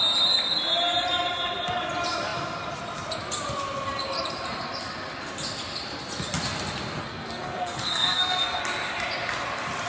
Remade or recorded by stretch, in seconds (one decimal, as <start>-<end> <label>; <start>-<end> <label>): 0.0-7.0 recorded; 7.0-8.6 remade; 8.6-9.9 recorded